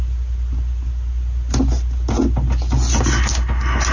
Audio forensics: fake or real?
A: real